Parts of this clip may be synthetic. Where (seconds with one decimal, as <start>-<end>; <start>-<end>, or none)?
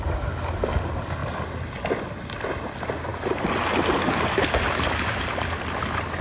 none